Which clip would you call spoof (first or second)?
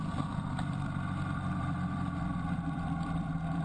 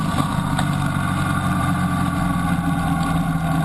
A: first